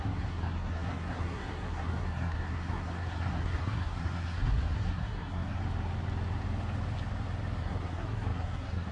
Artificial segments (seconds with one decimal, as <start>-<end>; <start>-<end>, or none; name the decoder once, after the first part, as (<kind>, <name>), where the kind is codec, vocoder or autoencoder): 0.0-5.6 (codec, SNAC); 7.6-8.9